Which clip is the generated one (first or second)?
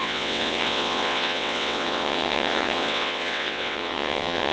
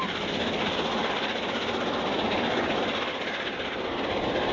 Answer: first